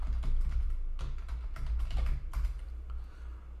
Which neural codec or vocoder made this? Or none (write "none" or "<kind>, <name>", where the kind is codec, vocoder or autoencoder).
none